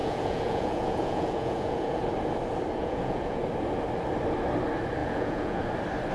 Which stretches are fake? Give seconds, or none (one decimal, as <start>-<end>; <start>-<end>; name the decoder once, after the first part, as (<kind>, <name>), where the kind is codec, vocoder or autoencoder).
0.0-2.0 (vocoder, Vocos); 2.8-3.4; 5.0-5.6